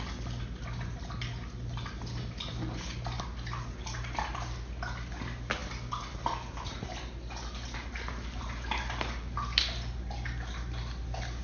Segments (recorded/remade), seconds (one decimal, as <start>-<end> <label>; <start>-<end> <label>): 0.0-11.4 recorded